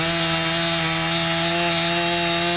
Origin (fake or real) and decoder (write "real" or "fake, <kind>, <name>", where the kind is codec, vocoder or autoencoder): real